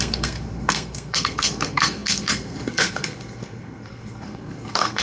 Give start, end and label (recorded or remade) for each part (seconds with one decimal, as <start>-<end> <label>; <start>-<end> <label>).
0.0-5.0 remade